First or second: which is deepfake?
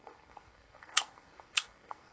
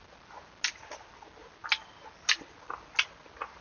first